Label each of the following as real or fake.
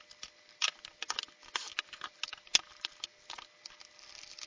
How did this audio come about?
real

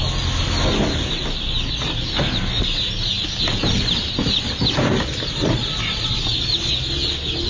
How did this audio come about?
real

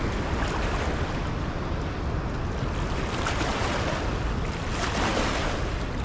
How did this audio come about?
real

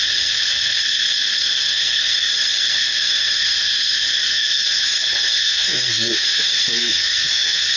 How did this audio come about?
fake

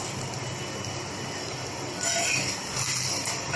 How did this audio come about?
real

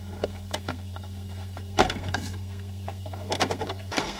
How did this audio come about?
fake